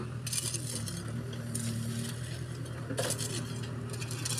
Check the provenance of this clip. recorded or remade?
recorded